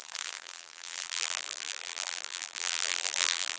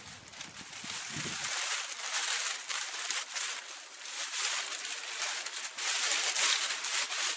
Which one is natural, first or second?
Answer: second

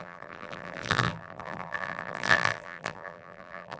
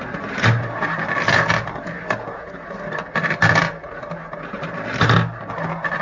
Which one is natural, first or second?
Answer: second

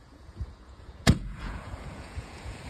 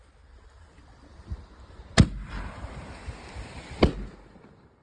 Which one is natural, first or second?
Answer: second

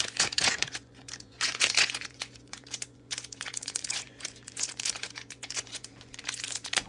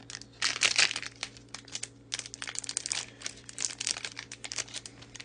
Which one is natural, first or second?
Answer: second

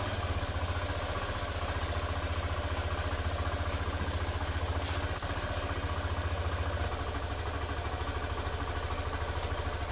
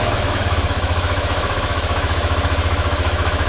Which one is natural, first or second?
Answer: first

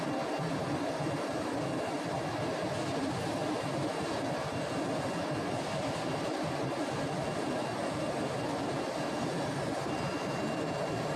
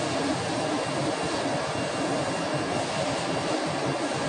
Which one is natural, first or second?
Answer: second